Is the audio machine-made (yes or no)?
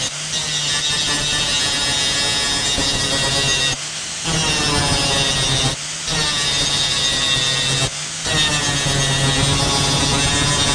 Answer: no